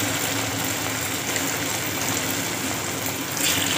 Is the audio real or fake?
real